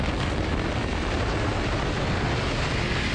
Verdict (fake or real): real